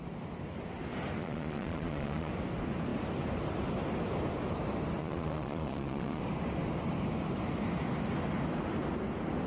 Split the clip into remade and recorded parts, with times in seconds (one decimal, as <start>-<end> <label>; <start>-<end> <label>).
0.0-1.2 recorded; 1.2-2.3 remade; 2.3-5.0 recorded; 5.0-6.2 remade; 6.2-9.5 recorded